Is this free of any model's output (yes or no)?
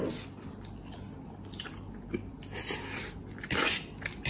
yes